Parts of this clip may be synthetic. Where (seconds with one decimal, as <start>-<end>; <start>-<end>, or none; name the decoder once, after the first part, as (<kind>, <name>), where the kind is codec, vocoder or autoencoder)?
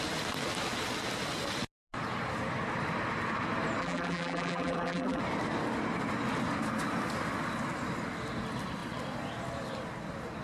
3.8-5.2 (vocoder, BigVGAN v2)